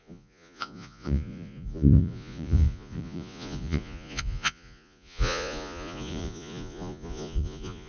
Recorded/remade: remade